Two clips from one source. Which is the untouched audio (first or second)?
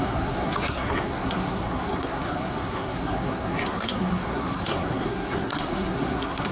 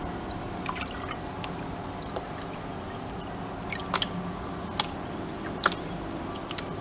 second